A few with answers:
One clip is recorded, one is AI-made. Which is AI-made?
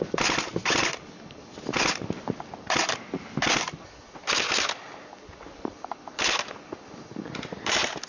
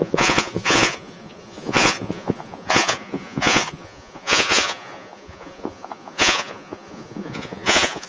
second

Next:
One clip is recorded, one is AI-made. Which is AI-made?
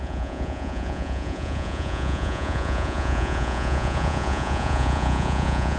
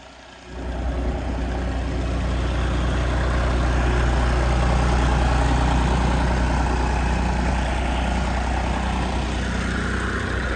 first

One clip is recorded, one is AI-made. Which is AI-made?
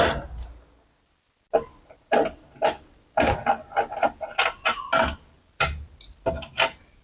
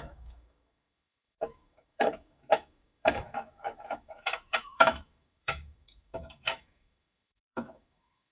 second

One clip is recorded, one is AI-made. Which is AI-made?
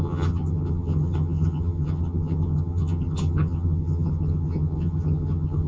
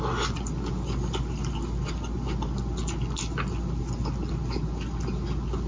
first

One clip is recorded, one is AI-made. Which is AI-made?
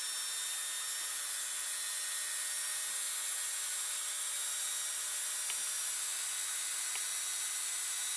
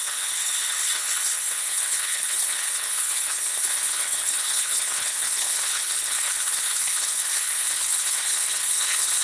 second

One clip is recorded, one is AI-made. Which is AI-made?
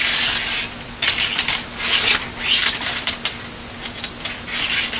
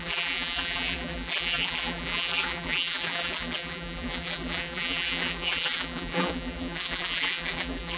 second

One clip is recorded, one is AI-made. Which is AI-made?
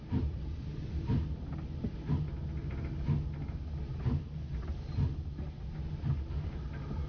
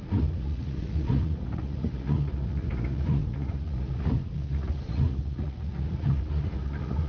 second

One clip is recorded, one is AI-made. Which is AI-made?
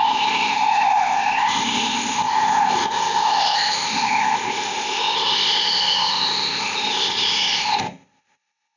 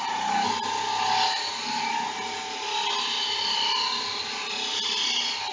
first